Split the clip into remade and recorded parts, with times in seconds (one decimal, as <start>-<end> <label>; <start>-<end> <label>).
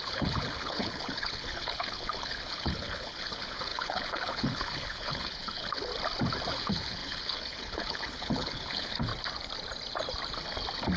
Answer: 0.0-5.9 remade; 5.9-6.5 recorded; 6.5-9.1 remade; 9.1-11.0 recorded